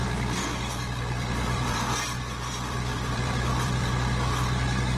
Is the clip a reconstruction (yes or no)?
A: yes